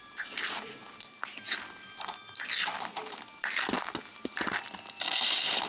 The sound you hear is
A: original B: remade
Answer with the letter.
A